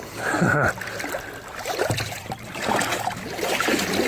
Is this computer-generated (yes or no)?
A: no